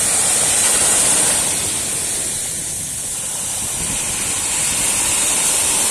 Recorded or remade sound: recorded